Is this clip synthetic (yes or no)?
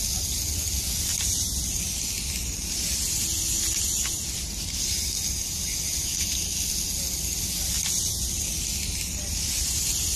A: no